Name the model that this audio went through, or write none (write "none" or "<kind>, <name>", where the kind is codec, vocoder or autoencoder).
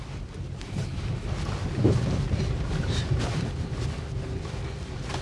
none